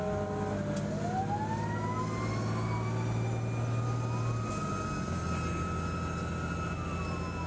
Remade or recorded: recorded